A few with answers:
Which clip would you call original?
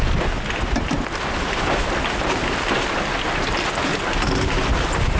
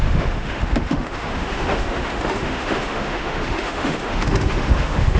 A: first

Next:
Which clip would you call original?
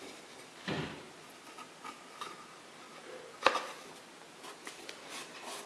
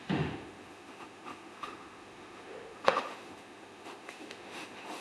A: first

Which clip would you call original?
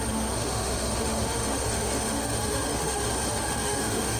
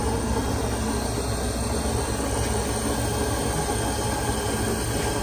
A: second